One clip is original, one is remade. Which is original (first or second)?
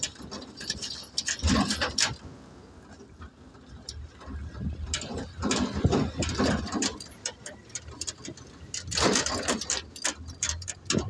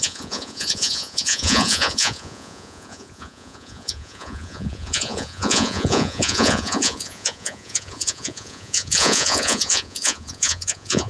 first